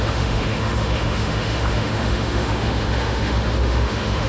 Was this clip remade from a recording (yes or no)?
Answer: yes